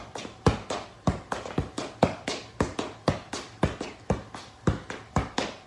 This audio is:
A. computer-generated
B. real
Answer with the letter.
B